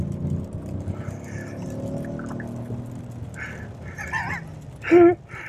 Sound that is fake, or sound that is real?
real